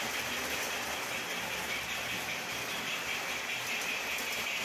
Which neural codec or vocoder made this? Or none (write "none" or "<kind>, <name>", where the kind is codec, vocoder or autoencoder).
none